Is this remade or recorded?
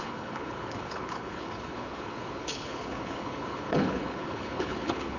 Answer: remade